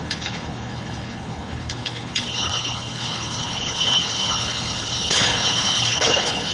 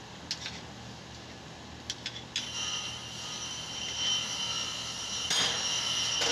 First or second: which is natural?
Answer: second